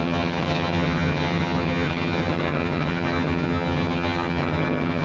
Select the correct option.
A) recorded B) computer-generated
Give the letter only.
B